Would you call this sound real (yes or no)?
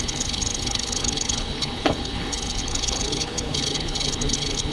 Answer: no